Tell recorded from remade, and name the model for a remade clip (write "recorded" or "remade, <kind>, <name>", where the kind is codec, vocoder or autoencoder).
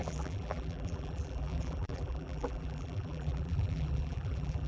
remade, vocoder, BigVGAN v2